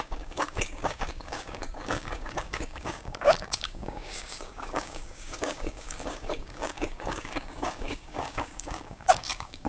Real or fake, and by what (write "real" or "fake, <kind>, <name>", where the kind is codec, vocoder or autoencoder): fake, codec, DAC